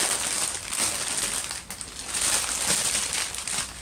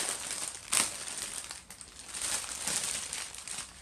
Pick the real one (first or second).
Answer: first